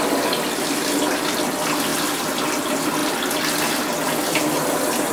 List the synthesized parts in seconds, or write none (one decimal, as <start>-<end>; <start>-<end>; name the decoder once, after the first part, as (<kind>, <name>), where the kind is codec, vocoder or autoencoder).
none